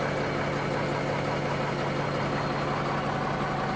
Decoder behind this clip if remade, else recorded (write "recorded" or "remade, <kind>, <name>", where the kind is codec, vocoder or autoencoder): recorded